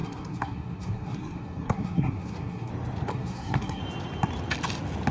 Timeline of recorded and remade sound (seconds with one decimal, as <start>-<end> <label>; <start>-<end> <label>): 0.0-2.7 remade; 2.7-3.1 recorded; 3.1-3.8 remade; 3.8-5.1 recorded